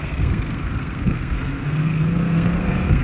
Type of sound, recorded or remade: remade